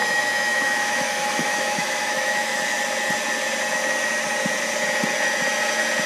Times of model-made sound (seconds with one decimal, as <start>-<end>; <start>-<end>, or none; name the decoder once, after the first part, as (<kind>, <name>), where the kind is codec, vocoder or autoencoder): 0.0-2.8 (autoencoder, DAC-VAE)